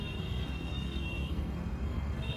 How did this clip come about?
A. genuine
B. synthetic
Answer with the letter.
B